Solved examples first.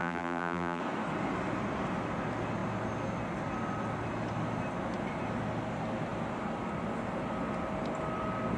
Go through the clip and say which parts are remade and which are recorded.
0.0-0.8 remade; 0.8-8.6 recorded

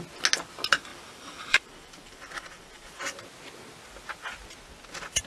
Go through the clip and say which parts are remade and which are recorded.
0.0-0.9 recorded; 0.9-3.0 remade; 3.0-5.3 recorded

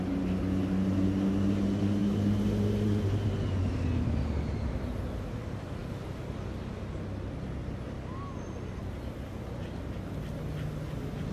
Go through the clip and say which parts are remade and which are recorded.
0.0-11.3 recorded